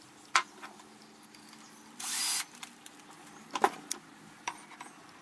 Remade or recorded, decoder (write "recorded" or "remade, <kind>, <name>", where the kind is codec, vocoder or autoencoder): recorded